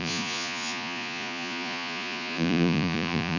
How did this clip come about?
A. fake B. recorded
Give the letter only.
A